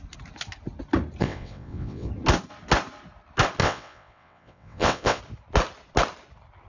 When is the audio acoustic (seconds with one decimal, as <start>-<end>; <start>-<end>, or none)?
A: 0.0-1.2; 2.1-3.6; 5.2-6.7

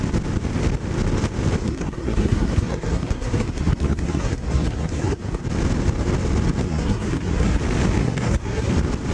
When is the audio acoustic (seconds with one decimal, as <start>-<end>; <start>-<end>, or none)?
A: 0.0-1.6; 5.4-6.6; 7.6-8.0; 8.7-9.1

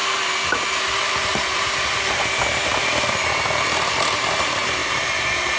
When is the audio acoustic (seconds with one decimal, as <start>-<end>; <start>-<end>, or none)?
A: 3.4-4.8

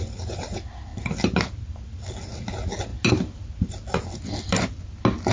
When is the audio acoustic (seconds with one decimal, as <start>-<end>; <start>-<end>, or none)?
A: 0.0-5.3

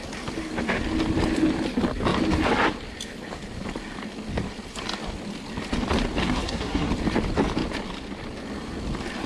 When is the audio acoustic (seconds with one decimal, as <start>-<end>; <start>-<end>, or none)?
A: 0.0-6.2; 6.9-9.3

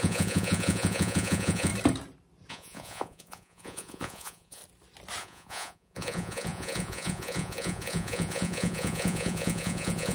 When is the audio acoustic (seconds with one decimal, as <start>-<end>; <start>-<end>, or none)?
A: 1.7-2.5; 4.6-5.2

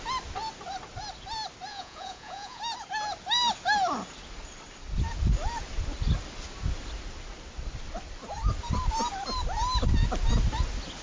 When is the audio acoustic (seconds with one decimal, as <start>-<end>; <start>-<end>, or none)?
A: 0.0-1.7; 2.6-11.0